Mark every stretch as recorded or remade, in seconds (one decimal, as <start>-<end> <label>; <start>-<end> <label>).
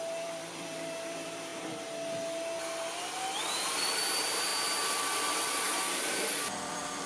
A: 0.0-1.5 remade; 1.5-3.4 recorded; 3.4-7.1 remade